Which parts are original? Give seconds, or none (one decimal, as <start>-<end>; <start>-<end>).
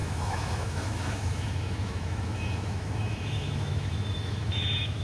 none